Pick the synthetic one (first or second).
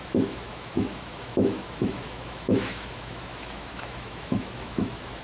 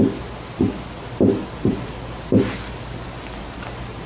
first